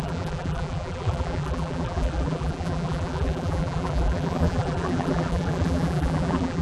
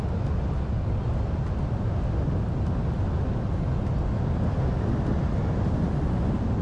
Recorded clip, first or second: second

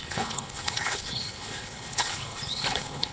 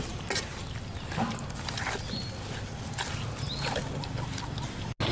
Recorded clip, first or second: second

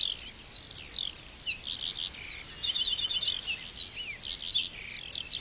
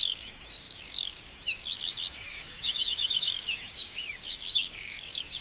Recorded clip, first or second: first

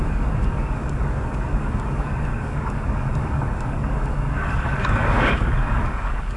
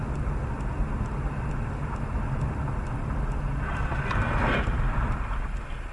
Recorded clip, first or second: second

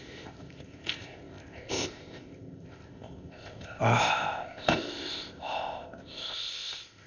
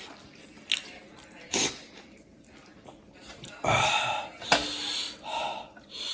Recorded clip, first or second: second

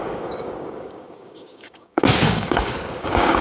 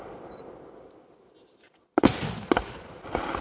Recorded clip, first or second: second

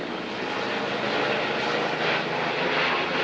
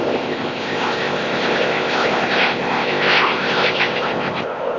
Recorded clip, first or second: first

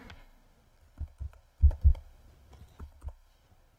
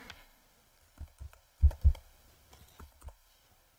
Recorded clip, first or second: first